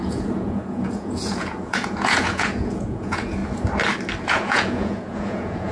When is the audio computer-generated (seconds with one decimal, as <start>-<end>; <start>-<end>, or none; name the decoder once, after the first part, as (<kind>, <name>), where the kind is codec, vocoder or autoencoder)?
0.0-3.4 (vocoder, Vocos); 4.2-5.7